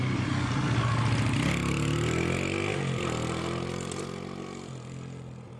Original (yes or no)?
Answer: yes